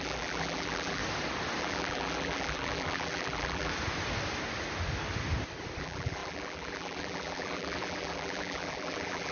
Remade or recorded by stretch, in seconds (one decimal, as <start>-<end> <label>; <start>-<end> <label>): 0.0-1.0 remade; 1.0-1.6 recorded; 1.6-3.7 remade; 3.7-5.8 recorded; 5.8-9.3 remade